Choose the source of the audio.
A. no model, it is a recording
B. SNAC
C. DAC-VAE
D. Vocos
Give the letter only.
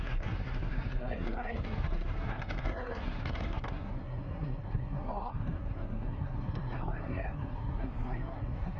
B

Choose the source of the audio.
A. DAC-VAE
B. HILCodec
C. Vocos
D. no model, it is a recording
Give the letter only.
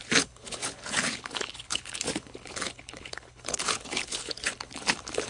B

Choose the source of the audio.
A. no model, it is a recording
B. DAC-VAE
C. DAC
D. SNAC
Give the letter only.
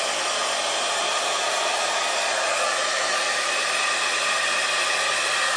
A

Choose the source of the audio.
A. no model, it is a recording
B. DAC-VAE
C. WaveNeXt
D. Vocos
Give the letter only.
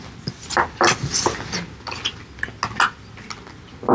A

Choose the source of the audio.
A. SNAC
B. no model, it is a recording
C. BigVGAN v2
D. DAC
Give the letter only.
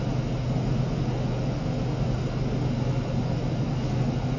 B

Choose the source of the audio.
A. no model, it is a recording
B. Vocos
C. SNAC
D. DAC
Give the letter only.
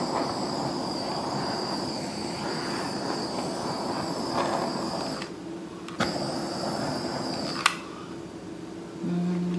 A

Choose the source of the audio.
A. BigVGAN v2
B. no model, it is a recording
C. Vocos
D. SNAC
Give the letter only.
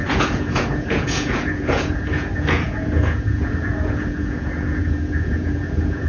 C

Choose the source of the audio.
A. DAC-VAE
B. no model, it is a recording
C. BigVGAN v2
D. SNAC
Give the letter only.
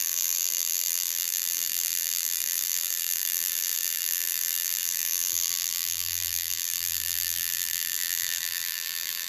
C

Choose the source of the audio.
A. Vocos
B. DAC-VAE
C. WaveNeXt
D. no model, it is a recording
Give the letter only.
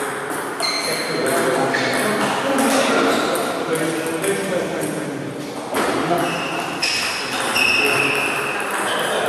D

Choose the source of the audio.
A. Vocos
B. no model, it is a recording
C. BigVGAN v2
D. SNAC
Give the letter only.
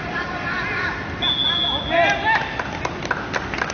B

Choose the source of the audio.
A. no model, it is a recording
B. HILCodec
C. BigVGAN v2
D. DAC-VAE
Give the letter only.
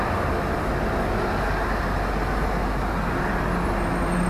A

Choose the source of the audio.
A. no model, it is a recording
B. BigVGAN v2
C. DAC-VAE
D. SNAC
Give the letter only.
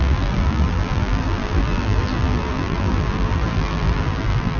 B